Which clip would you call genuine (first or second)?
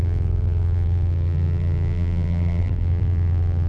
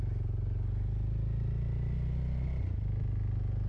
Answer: second